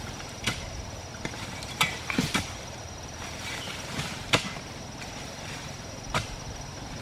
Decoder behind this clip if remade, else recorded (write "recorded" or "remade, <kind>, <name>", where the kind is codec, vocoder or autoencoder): remade, vocoder, BigVGAN v2